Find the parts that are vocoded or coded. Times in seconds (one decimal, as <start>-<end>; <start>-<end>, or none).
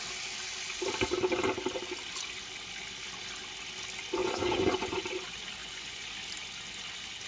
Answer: 4.2-5.0; 5.6-6.1